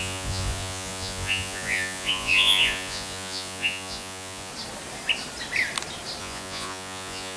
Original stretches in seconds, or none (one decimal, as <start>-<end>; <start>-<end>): 4.5-6.2